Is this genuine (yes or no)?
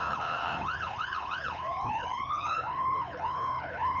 no